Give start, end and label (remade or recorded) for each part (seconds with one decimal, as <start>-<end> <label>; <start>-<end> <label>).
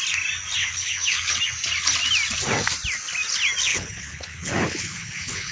0.0-0.6 recorded; 0.6-1.4 remade; 1.4-3.7 recorded; 3.7-5.5 remade